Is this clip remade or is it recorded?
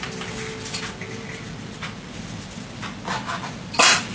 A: recorded